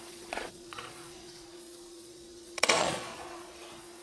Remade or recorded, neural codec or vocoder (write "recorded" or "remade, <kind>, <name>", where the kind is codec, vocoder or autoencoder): remade, vocoder, Vocos